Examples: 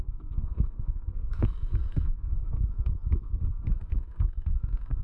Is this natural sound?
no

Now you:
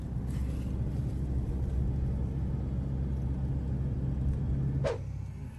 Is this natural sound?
yes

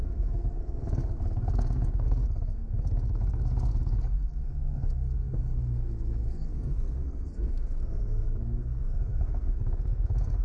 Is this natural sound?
no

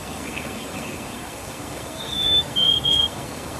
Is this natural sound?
no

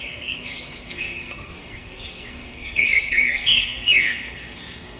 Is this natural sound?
no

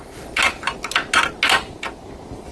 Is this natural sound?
yes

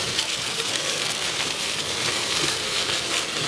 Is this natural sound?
no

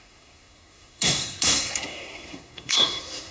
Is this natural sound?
no